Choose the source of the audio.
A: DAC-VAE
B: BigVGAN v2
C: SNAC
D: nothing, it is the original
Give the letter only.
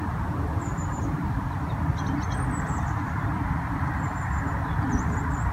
B